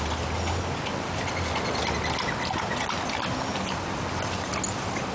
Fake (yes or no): no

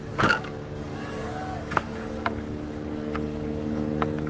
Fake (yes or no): yes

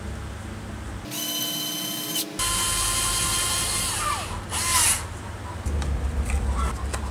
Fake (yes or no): no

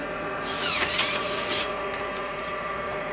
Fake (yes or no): yes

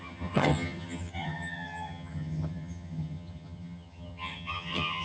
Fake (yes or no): yes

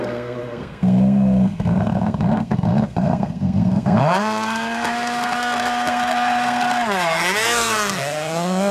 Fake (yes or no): yes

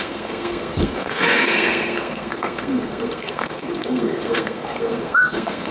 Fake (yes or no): yes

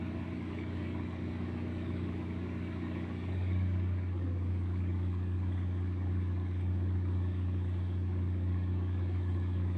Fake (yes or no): yes